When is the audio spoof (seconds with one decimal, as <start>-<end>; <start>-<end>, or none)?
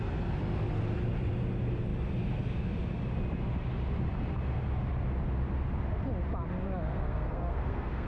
6.9-8.1